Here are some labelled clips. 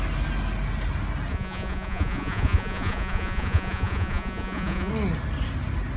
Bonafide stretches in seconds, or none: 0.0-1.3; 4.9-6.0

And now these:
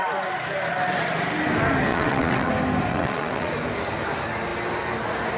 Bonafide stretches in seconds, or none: 0.0-1.9; 2.5-2.9; 3.5-5.4

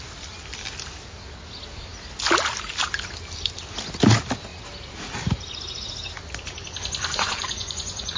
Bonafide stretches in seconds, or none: 0.0-7.1

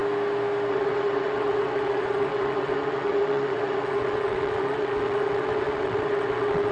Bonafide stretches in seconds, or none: 0.0-0.7

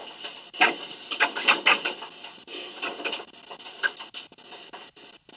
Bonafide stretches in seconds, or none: 0.0-5.4